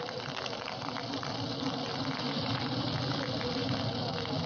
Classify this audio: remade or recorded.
recorded